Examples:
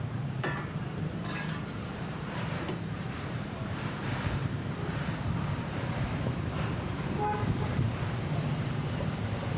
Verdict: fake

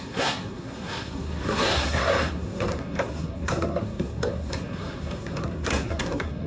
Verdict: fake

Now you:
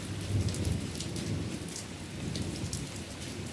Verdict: real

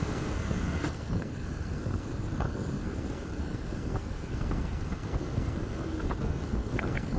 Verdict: fake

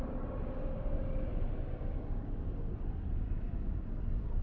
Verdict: real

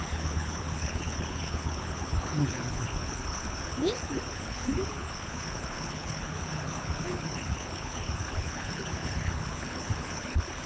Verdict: fake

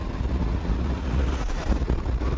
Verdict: fake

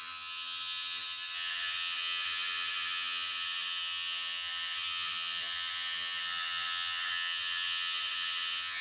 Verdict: fake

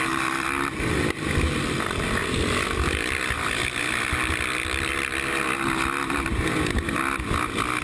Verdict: real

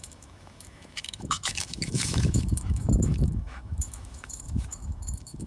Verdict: fake